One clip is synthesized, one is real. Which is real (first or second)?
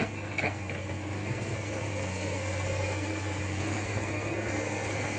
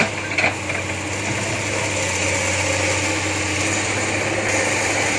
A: second